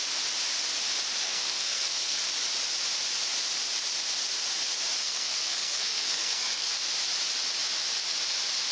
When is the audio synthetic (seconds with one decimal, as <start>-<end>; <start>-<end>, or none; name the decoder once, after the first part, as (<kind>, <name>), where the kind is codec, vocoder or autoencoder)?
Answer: 1.2-2.2 (codec, SNAC); 5.0-6.7